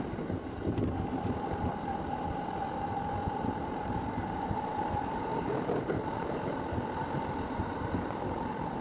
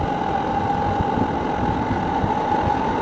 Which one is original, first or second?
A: second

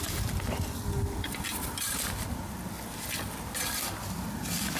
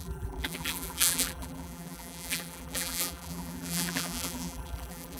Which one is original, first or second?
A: first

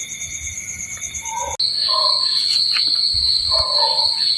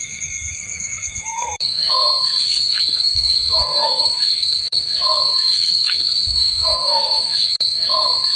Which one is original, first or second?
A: first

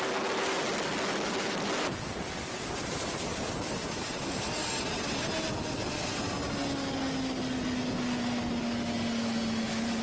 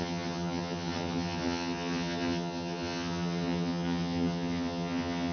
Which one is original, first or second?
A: first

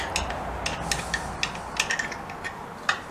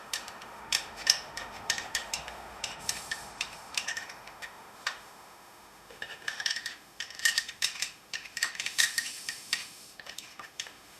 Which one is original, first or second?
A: first